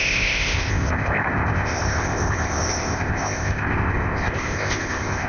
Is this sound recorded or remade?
remade